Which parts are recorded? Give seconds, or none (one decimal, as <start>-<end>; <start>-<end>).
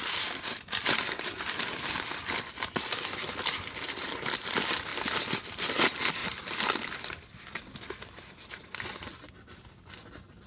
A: 0.0-10.5